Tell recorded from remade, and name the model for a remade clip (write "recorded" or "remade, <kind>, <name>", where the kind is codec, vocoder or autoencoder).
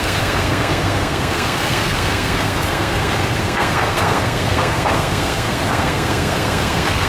remade, codec, SNAC